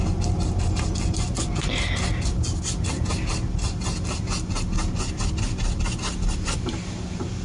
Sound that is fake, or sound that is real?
real